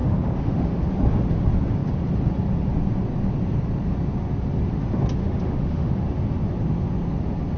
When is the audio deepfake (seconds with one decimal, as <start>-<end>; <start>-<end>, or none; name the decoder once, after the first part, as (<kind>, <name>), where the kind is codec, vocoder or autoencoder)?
0.0-0.8 (autoencoder, DAC-VAE); 5.2-5.9